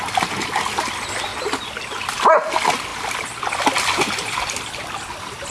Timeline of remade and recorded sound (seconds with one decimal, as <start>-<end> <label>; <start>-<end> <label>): 0.0-5.5 recorded